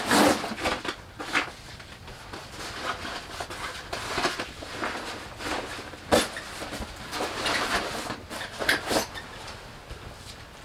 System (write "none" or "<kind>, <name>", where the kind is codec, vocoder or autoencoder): none